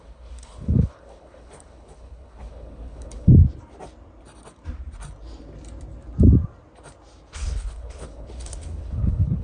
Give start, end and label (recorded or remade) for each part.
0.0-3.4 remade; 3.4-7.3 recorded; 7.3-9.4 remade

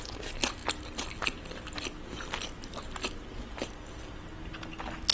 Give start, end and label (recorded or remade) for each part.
0.0-5.1 recorded

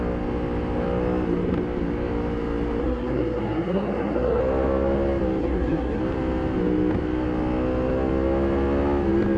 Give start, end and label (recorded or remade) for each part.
0.0-2.8 recorded; 2.8-4.4 remade; 4.4-5.4 recorded; 5.4-6.0 remade; 6.0-9.4 recorded

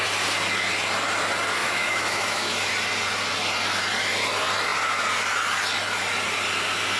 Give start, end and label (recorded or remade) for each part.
0.0-1.6 recorded; 1.6-2.7 remade; 2.7-7.0 recorded

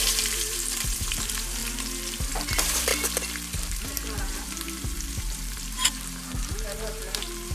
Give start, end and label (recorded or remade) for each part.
0.0-1.6 remade; 1.6-2.4 recorded; 2.4-2.9 remade; 2.9-3.7 recorded; 3.7-7.5 remade

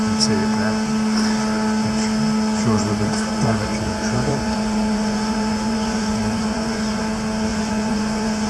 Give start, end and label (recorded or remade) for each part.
0.0-2.6 recorded; 2.6-7.0 remade; 7.0-7.5 recorded; 7.5-8.5 remade

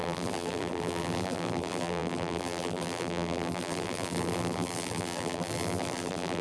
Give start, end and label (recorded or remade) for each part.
0.0-6.4 remade

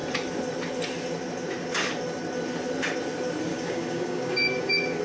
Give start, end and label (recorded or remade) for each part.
0.0-3.5 recorded; 3.5-5.0 remade